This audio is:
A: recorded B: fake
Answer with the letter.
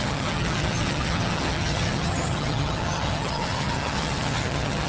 B